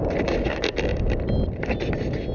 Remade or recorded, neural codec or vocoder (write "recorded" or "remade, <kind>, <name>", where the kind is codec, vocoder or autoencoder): recorded